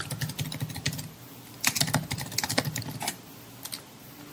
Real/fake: real